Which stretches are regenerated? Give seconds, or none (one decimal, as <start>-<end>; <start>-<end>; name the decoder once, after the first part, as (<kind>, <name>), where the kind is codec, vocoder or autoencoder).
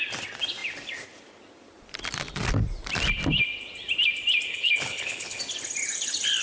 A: 4.5-5.4 (codec, HILCodec)